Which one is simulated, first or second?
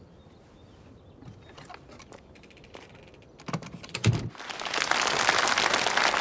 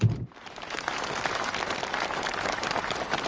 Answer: second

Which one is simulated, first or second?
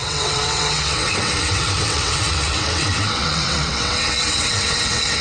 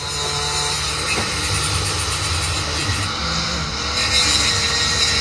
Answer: first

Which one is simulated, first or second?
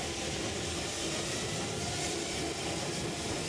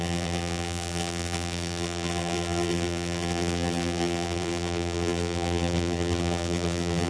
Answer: second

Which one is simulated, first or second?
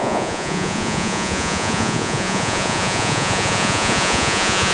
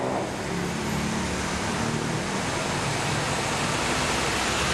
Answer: first